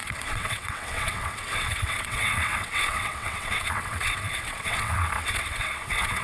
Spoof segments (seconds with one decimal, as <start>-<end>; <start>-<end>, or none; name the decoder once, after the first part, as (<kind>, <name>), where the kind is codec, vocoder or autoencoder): 0.0-6.2 (vocoder, WaveNeXt)